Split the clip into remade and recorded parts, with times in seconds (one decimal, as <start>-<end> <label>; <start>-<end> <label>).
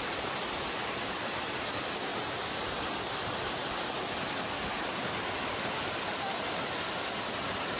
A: 0.0-7.8 recorded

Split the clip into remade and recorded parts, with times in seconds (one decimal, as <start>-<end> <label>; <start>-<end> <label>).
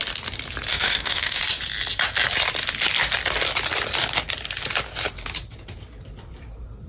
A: 0.0-0.7 recorded; 0.7-1.4 remade; 1.4-6.9 recorded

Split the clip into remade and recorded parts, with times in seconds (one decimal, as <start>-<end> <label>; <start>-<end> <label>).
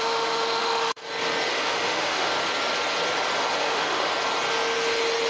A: 0.0-1.0 remade; 1.0-1.5 recorded; 1.5-2.3 remade; 2.3-3.6 recorded; 3.6-4.1 remade; 4.1-5.3 recorded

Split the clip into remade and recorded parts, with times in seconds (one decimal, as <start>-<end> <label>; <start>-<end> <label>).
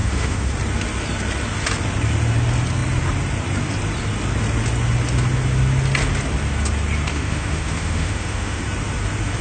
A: 0.0-0.5 remade; 0.5-7.1 recorded; 7.1-8.6 remade; 8.6-9.4 recorded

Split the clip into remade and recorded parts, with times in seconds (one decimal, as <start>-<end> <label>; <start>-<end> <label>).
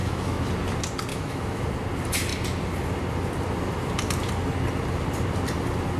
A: 0.0-0.5 remade; 0.5-1.1 recorded; 1.1-1.7 remade; 1.7-6.0 recorded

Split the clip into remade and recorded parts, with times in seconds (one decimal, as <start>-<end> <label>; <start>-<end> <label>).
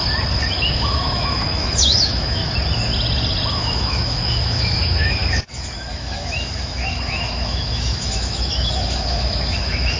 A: 0.0-0.7 recorded; 0.7-2.4 remade; 2.4-3.5 recorded; 3.5-10.0 remade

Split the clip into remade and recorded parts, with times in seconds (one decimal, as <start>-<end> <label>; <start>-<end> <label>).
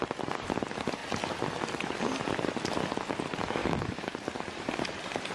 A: 0.0-3.6 recorded; 3.6-4.1 remade; 4.1-5.3 recorded